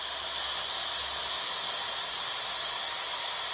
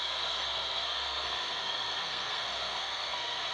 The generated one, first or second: second